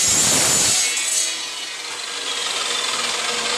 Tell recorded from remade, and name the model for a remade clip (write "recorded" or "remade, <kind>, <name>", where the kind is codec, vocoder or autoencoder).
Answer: recorded